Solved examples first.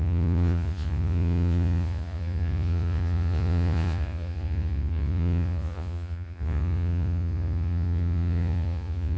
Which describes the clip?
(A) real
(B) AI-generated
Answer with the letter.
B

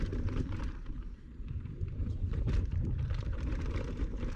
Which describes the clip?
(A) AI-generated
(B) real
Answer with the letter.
A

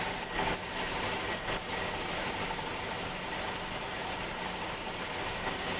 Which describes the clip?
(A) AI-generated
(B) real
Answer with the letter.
B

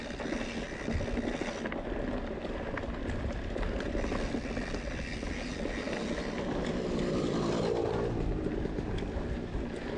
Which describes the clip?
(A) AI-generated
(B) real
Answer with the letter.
B